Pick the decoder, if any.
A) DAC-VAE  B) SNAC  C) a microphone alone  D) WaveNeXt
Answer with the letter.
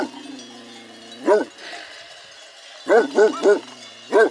C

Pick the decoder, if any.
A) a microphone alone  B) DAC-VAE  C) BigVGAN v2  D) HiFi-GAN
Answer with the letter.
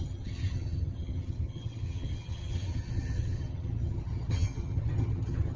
D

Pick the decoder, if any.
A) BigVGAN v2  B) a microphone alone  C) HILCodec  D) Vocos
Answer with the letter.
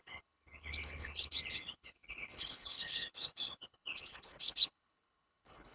C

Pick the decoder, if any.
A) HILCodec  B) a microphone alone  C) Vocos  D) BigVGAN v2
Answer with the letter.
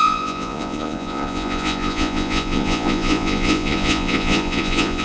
C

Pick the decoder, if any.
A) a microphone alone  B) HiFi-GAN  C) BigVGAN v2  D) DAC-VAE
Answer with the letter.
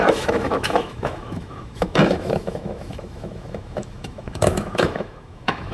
D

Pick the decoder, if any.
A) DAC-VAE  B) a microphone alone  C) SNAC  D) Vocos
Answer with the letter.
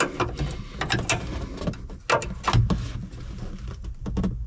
B